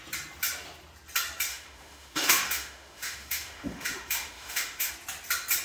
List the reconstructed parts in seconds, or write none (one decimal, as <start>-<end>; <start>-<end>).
1.5-4.9